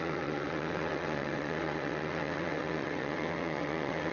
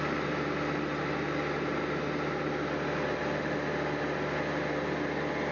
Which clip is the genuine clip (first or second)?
second